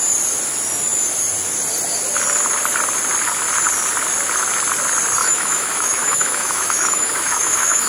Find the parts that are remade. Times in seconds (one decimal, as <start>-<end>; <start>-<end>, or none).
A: 5.2-7.9

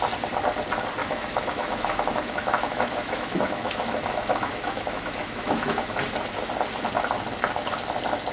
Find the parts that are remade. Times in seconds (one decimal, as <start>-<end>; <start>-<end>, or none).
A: 1.0-5.9

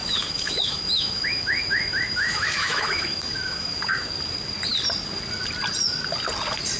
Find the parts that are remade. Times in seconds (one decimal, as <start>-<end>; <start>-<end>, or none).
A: 0.0-4.1

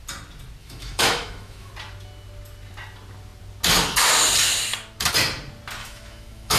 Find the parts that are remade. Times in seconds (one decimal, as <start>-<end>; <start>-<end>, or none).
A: 0.6-1.7; 5.8-6.6

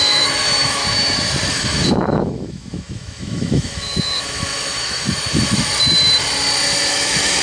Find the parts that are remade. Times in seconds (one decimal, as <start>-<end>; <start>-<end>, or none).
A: 0.0-0.8; 1.5-5.7; 6.9-7.4

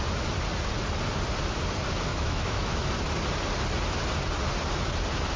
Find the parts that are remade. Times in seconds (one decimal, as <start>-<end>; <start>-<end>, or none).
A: 2.1-2.9

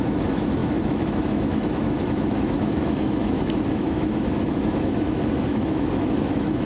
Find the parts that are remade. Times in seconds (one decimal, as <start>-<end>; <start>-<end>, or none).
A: 0.0-6.7

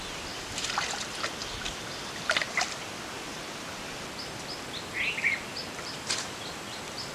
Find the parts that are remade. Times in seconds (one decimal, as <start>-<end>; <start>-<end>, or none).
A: none